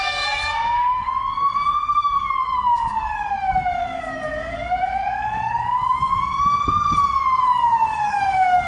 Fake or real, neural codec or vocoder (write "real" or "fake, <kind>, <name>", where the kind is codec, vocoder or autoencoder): fake, codec, DAC